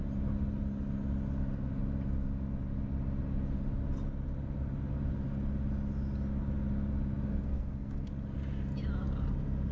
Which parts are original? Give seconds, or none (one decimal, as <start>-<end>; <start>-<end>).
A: 0.0-7.3; 8.1-9.7